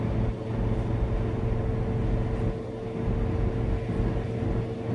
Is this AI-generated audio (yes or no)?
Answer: no